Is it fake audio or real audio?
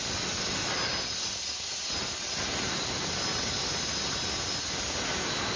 real